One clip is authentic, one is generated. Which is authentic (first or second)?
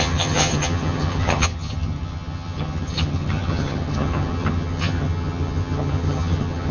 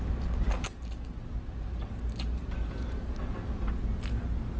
second